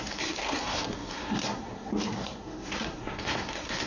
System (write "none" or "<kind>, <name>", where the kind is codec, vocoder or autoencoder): codec, SNAC